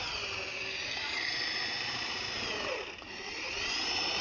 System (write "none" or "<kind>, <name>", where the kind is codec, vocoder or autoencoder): none